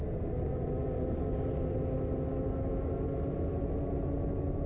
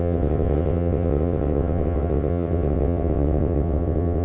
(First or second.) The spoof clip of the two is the second